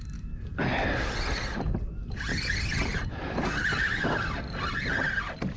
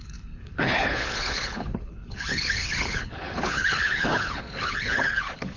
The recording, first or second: first